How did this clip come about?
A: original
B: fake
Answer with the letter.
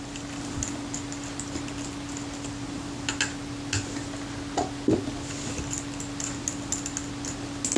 A